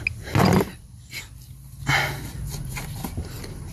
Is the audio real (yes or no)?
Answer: yes